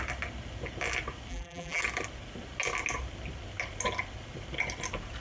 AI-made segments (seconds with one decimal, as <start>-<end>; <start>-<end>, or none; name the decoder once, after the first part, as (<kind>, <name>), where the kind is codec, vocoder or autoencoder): 1.3-1.8 (vocoder, BigVGAN v2)